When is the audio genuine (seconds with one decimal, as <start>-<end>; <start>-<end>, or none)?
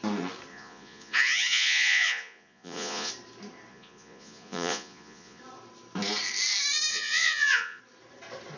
0.0-0.5; 3.1-3.7; 5.4-6.9; 7.8-8.6